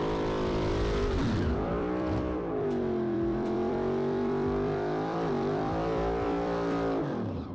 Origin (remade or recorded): remade